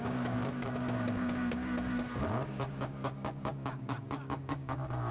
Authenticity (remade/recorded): remade